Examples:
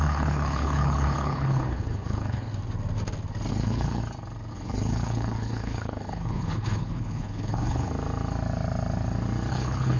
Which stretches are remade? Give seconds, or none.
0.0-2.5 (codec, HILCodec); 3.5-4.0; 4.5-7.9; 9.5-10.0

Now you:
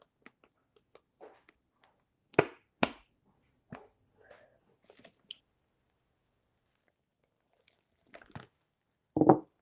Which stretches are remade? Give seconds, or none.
none

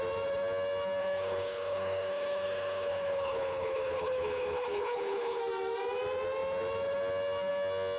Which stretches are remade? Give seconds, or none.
1.0-5.4 (codec, HILCodec)

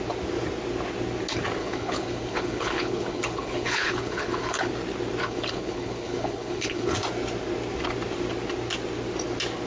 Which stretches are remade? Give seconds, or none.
1.6-4.7 (codec, HILCodec); 5.2-6.9

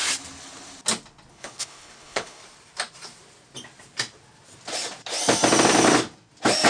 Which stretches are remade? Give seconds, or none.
1.3-2.4 (codec, HILCodec)

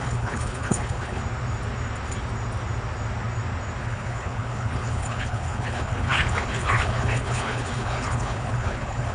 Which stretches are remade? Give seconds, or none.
0.0-1.2 (codec, HILCodec); 3.8-9.1